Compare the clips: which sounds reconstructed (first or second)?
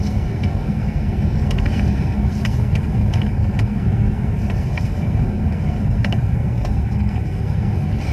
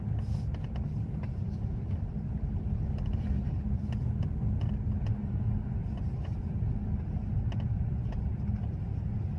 first